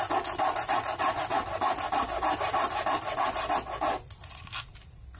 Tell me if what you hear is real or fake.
real